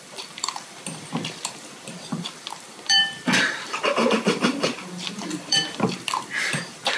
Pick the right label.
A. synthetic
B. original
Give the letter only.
A